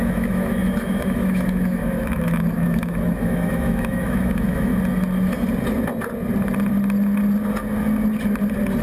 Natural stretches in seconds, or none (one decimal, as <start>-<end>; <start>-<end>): 4.7-8.8